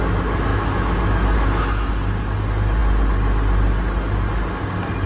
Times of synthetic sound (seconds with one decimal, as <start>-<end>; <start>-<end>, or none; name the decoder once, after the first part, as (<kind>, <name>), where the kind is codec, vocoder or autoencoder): 0.5-1.9 (autoencoder, DAC-VAE)